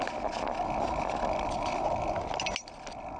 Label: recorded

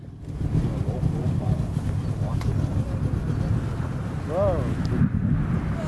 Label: recorded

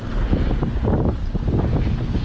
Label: recorded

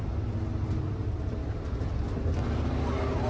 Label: recorded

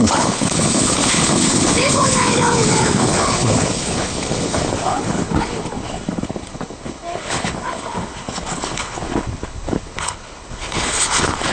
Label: remade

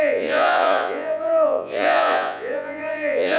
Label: remade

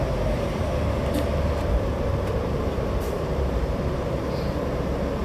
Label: remade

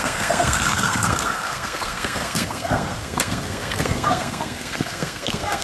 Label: remade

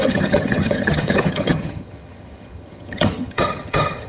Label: remade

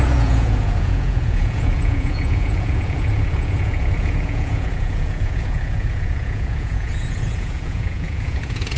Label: remade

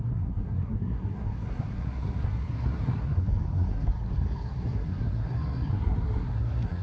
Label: remade